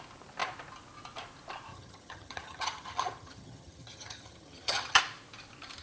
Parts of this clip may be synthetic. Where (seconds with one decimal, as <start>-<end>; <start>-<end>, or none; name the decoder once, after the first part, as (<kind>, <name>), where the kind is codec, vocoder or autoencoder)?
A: 1.7-5.0 (vocoder, HiFi-GAN)